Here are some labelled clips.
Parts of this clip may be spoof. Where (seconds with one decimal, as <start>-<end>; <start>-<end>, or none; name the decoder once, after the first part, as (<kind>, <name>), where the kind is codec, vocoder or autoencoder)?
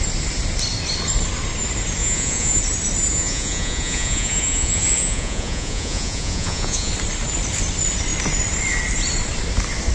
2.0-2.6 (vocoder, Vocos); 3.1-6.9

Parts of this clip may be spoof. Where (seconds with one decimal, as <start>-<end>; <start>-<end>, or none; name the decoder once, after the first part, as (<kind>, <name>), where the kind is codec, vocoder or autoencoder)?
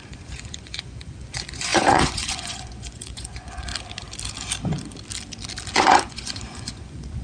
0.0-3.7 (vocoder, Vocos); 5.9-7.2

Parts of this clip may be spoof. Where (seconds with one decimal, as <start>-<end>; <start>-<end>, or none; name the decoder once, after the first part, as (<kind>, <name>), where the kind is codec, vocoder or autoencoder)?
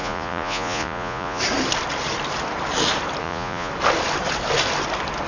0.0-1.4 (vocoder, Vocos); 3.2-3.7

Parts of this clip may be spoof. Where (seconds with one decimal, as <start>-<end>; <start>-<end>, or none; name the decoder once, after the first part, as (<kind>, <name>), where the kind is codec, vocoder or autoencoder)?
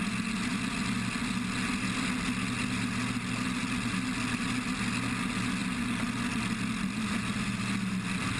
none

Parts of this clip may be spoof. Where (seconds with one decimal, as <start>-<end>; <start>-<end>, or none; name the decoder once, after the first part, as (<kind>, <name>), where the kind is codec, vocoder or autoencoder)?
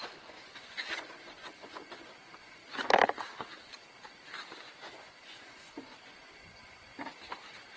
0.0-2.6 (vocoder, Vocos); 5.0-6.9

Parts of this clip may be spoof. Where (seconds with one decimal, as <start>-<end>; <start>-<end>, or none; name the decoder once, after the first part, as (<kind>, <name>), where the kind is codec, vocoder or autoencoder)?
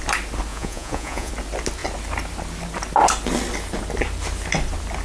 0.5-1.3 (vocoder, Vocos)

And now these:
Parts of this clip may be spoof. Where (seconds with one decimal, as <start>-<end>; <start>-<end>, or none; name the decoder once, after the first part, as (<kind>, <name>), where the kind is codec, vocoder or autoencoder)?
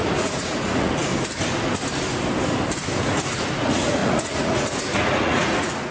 0.0-1.1 (vocoder, Vocos); 3.0-5.9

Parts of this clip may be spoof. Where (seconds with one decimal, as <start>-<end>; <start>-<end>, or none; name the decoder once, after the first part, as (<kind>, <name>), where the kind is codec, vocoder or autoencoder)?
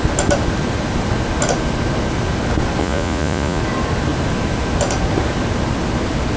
2.8-3.6 (vocoder, Vocos)